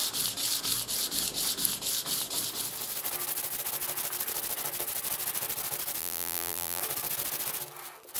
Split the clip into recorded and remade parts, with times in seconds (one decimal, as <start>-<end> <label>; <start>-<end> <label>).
0.0-6.0 recorded; 6.0-6.8 remade; 6.8-8.2 recorded